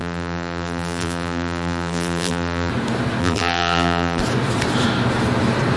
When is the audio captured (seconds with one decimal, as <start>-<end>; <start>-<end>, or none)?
2.7-3.2; 4.2-5.8